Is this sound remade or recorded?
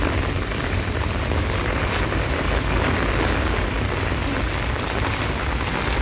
recorded